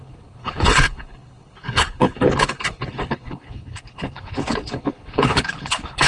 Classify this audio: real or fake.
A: fake